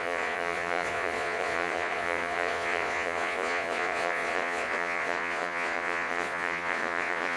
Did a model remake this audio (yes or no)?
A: yes